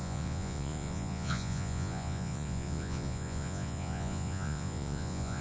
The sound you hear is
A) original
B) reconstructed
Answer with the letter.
B